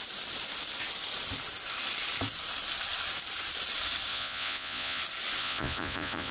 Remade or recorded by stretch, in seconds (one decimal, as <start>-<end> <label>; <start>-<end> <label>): 0.0-4.1 recorded; 4.1-5.0 remade; 5.0-5.4 recorded; 5.4-6.3 remade